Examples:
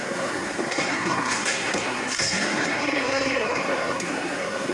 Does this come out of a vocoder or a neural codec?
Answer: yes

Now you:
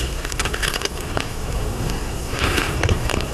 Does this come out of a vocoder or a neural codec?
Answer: yes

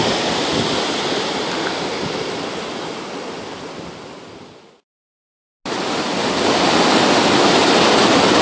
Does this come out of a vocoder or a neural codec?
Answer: no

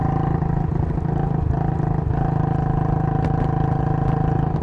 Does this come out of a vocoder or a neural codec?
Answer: no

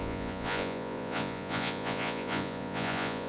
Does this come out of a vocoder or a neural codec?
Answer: yes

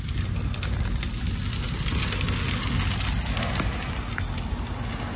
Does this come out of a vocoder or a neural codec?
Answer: no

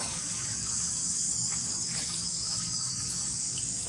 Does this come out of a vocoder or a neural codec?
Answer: yes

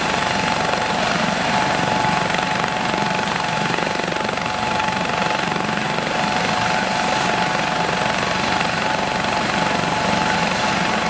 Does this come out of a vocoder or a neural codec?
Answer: yes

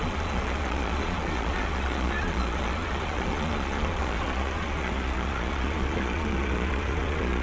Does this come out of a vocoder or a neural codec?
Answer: yes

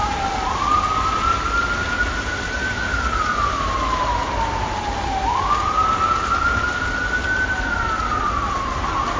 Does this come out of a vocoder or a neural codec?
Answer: no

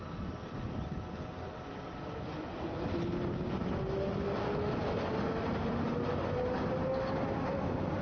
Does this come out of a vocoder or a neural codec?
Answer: no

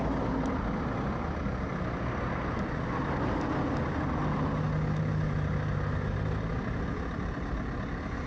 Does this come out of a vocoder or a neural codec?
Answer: no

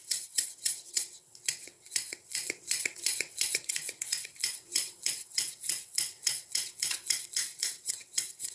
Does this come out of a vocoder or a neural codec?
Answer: yes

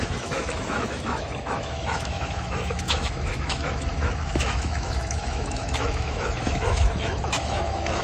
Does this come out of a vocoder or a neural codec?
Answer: yes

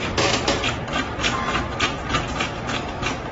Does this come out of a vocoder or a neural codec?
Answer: no